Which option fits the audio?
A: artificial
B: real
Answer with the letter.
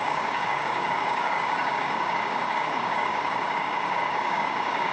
A